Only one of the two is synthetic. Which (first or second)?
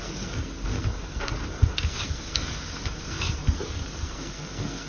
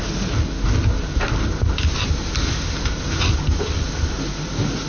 first